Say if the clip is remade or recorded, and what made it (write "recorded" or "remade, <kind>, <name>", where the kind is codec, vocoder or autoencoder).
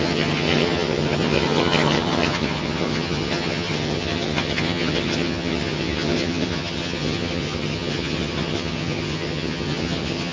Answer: remade, vocoder, HiFi-GAN